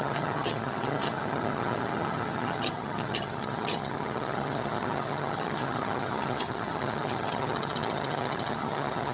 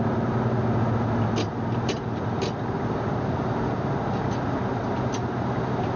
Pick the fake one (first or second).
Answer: first